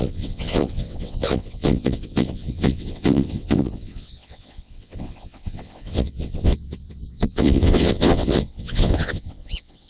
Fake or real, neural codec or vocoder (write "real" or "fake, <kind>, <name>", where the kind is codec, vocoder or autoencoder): fake, vocoder, WaveNeXt